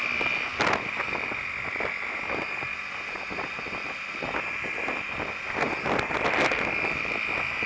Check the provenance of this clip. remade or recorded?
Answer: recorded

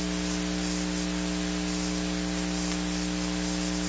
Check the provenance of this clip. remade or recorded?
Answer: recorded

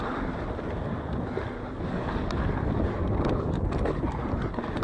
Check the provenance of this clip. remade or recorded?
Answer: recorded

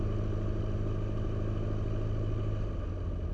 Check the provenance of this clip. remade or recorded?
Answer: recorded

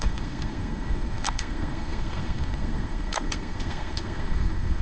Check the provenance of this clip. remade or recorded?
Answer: remade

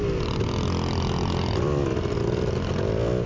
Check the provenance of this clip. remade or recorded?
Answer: recorded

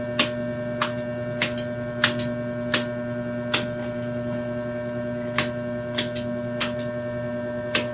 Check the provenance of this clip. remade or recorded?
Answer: recorded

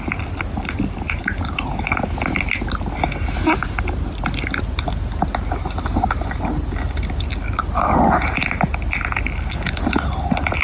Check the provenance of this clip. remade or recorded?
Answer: recorded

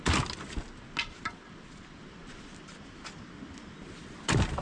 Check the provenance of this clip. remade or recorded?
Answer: recorded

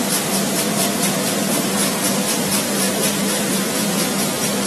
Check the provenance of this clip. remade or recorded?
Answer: remade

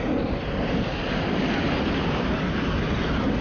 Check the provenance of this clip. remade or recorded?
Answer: recorded